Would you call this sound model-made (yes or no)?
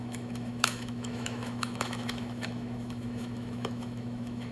yes